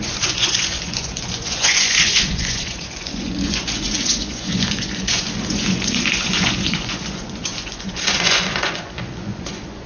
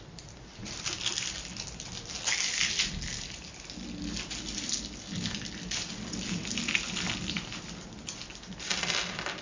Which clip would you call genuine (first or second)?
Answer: second